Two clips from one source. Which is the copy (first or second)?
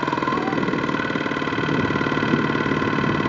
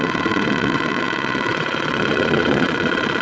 second